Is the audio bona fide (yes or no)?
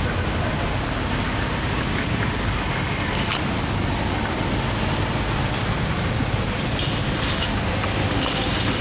yes